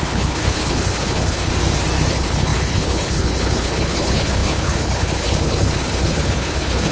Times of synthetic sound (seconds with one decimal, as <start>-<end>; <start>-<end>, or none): 0.0-1.5; 2.1-6.9